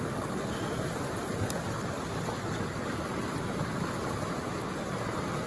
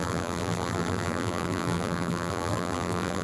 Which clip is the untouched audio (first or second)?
first